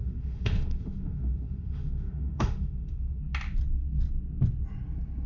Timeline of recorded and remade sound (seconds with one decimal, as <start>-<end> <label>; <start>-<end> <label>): 0.0-3.2 remade; 3.2-5.3 recorded